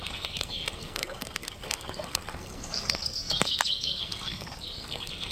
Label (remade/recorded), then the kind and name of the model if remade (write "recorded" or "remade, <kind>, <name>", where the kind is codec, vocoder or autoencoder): remade, codec, SNAC